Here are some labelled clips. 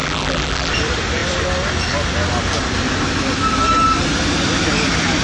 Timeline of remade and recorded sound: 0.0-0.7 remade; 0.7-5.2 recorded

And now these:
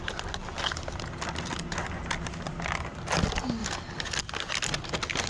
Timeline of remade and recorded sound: 0.0-5.3 recorded

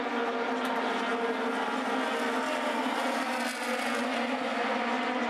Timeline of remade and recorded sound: 0.0-5.3 recorded